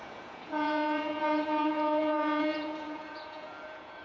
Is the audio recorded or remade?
remade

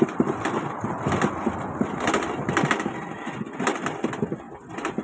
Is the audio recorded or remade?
recorded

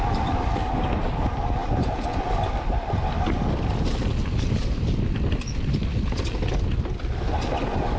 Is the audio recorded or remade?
recorded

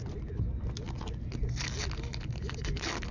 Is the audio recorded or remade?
recorded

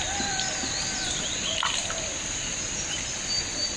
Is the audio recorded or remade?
remade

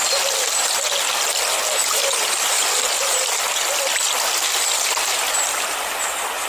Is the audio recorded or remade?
recorded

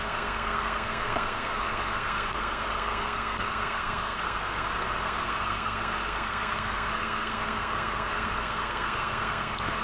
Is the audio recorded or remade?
remade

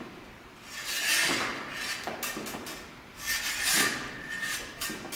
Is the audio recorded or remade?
recorded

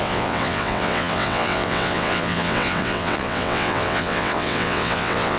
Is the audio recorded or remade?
remade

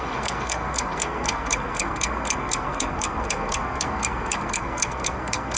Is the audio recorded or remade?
remade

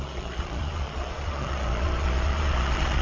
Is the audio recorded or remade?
remade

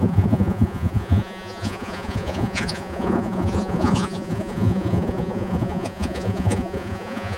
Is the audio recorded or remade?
remade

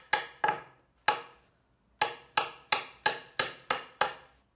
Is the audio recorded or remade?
recorded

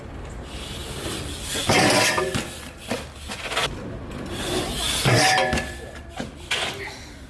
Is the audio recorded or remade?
recorded